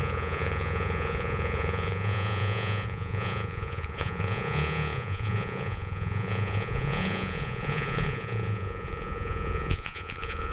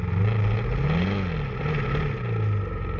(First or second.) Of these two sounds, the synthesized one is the first